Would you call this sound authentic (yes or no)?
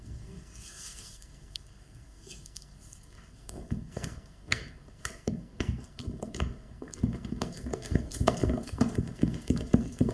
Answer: no